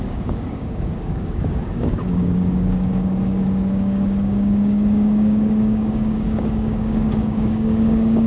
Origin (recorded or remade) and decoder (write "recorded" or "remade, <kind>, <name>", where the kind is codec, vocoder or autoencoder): remade, codec, DAC